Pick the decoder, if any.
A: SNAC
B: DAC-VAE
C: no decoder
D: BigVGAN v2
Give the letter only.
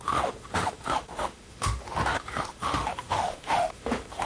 B